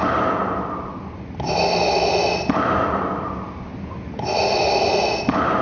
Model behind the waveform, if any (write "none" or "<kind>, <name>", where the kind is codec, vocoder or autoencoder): none